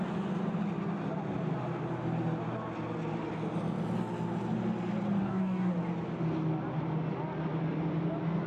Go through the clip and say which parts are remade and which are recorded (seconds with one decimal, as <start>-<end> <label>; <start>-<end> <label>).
0.0-5.2 recorded; 5.2-5.7 remade; 5.7-8.5 recorded